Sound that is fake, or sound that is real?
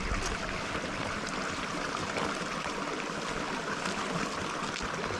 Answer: real